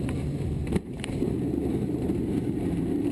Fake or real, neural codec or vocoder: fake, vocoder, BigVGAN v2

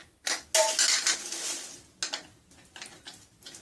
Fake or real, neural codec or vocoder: real